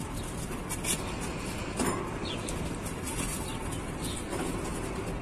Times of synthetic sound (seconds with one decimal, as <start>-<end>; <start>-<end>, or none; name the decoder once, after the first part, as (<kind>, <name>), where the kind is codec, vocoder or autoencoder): 3.3-4.8 (vocoder, BigVGAN v2)